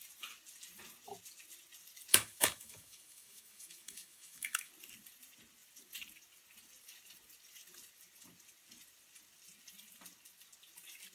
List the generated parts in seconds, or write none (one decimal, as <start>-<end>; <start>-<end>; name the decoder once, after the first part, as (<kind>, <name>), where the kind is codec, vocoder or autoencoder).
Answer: 2.1-4.7 (autoencoder, DAC-VAE)